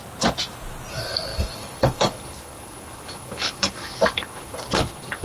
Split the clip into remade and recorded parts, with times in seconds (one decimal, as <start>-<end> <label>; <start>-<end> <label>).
0.0-0.9 recorded; 0.9-5.2 remade